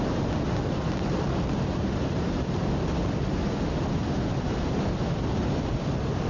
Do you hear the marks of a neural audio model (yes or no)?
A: no